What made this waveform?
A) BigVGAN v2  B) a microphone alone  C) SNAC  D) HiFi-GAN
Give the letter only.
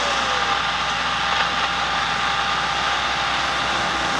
B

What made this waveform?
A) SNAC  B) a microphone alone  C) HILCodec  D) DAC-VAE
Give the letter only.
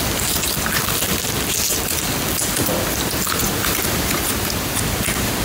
B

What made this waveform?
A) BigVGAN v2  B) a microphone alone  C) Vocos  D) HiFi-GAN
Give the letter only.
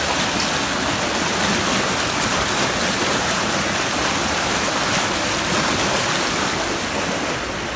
B